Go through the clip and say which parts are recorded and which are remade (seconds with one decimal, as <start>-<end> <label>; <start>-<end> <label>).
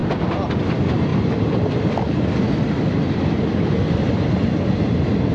0.0-5.3 recorded